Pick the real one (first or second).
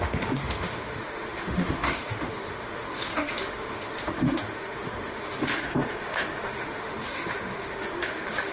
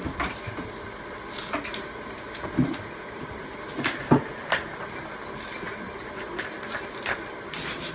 second